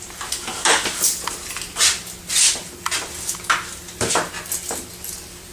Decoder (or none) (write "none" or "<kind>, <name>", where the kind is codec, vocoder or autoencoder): none